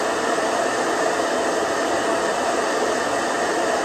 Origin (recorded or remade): recorded